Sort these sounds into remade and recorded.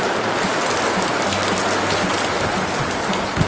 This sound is recorded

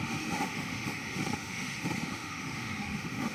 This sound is remade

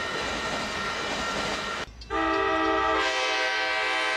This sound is recorded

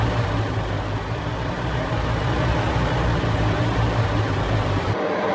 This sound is remade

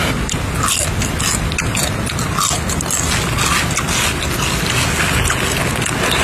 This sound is recorded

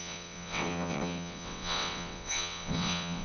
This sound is remade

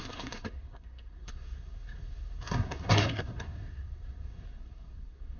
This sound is remade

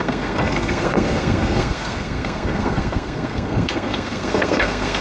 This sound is remade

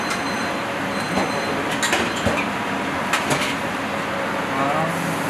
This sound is recorded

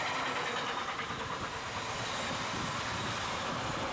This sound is recorded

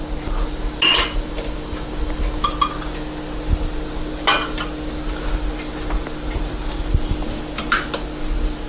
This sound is recorded